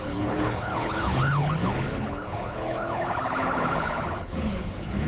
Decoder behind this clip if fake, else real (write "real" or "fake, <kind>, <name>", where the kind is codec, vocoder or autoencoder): fake, codec, HILCodec